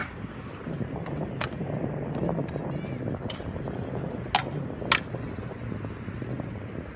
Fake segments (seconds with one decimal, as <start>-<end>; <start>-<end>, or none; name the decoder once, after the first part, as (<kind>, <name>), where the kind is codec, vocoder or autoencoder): none